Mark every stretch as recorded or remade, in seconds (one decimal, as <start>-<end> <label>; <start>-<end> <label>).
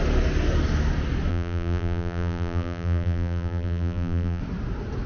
0.0-1.3 recorded; 1.3-4.4 remade; 4.4-5.1 recorded